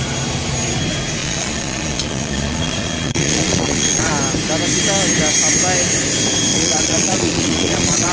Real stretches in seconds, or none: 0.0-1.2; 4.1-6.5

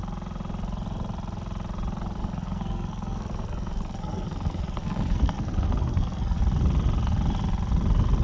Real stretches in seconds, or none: 0.0-2.2; 6.4-8.2

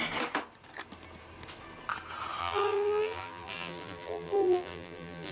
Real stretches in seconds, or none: 0.0-2.4

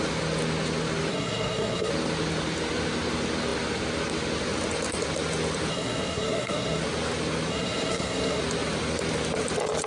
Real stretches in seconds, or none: 0.0-1.1; 1.9-5.7; 6.8-7.5; 8.4-9.9

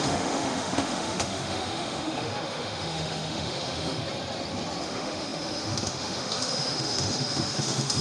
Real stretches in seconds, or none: 4.0-4.8